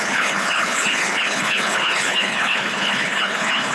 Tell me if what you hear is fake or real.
fake